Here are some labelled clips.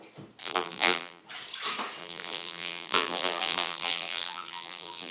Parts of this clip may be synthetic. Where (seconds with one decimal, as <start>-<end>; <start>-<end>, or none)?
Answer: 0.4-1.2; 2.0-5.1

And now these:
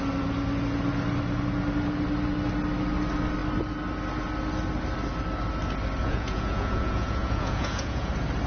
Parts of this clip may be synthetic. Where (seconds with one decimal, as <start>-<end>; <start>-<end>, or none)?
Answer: 6.0-8.1

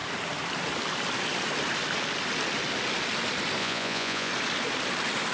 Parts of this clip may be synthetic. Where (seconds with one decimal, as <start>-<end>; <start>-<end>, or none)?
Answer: 3.6-4.3

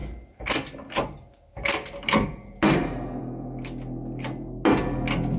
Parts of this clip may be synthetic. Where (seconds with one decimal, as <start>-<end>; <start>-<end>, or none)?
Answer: none

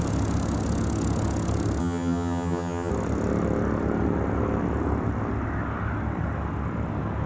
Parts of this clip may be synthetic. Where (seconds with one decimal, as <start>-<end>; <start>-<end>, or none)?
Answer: 1.8-2.9

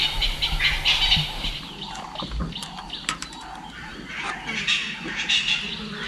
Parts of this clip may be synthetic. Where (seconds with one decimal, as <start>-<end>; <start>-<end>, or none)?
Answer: none

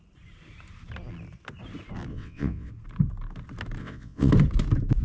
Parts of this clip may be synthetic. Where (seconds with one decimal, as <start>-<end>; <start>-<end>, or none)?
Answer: 2.1-2.7; 3.8-4.3